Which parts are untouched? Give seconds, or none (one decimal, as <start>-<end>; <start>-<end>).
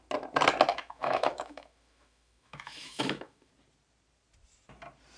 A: 0.0-0.7; 3.5-5.2